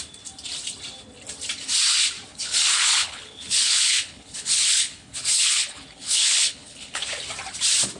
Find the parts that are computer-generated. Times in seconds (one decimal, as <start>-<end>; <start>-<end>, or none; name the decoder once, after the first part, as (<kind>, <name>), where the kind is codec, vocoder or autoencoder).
2.3-7.0 (codec, HILCodec)